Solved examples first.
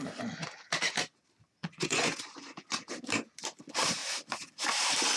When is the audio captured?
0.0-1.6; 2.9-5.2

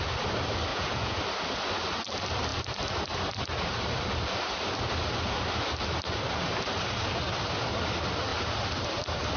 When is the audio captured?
0.0-0.7; 1.2-9.4

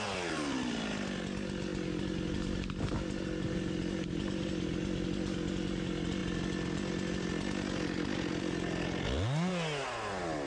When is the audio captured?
0.0-10.5

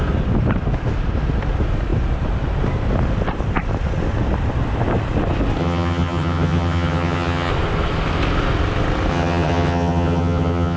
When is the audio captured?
0.0-5.6; 7.5-9.1

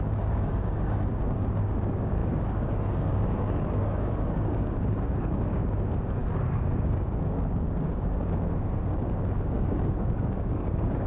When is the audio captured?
none

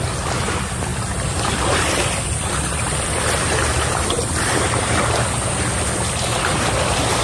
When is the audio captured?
0.0-7.2

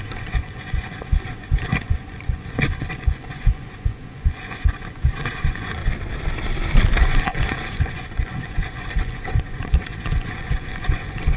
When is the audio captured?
5.8-7.0

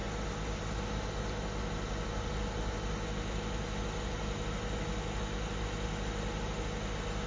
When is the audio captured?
0.0-7.3